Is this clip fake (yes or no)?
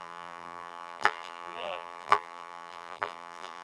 yes